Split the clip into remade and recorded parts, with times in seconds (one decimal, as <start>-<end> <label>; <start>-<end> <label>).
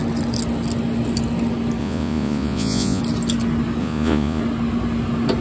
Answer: 0.0-1.8 recorded; 1.8-3.0 remade; 3.0-3.8 recorded; 3.8-4.4 remade; 4.4-5.4 recorded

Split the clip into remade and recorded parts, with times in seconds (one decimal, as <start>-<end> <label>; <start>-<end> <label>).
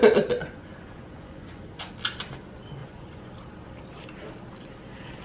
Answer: 0.0-0.4 recorded; 0.4-1.9 remade; 1.9-2.8 recorded; 2.8-3.3 remade; 3.3-5.2 recorded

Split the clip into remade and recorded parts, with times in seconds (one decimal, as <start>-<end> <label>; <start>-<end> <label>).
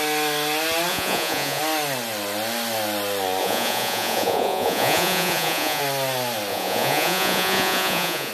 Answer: 0.0-0.9 recorded; 0.9-1.6 remade; 1.6-3.4 recorded; 3.4-5.8 remade; 5.8-6.5 recorded; 6.5-8.3 remade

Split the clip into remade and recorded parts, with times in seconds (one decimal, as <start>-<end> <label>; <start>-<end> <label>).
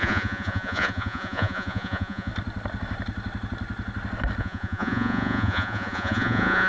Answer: 0.0-2.3 remade; 2.3-4.4 recorded; 4.4-6.7 remade